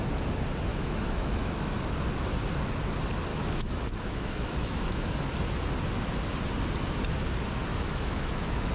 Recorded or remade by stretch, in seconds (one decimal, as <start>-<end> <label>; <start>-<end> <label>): 0.0-0.7 recorded; 0.7-1.9 remade; 1.9-3.3 recorded; 3.3-5.1 remade; 5.1-7.7 recorded; 7.7-8.7 remade